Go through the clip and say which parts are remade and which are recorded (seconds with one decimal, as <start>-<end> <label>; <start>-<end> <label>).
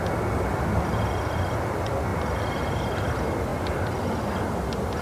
0.0-5.0 recorded